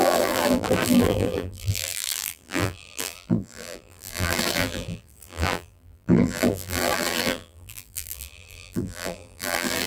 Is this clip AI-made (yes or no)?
yes